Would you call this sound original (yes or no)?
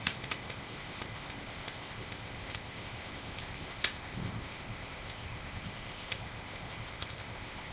no